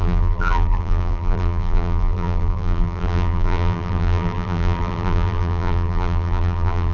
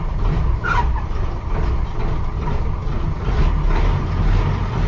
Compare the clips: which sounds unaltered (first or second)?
second